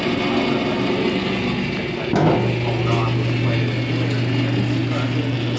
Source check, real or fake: real